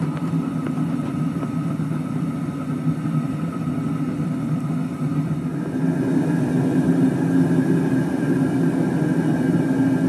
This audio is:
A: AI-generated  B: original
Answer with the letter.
B